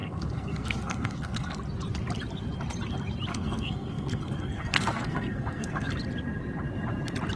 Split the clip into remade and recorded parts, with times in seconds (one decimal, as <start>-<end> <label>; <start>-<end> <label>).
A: 0.0-1.6 remade; 1.6-3.3 recorded; 3.3-5.9 remade; 5.9-7.4 recorded